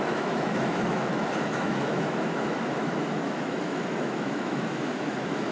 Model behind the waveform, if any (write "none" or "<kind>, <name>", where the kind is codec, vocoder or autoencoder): autoencoder, DAC-VAE